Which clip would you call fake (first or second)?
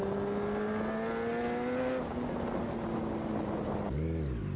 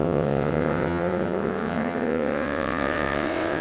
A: second